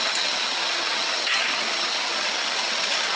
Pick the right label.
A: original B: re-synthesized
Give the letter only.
B